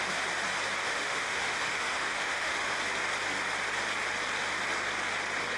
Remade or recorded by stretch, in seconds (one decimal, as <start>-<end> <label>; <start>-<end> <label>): 0.0-0.8 recorded; 0.8-2.8 remade; 2.8-5.6 recorded